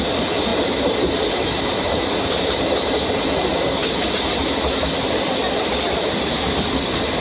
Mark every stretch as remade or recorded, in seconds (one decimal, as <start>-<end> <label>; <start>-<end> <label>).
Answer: 0.0-7.2 recorded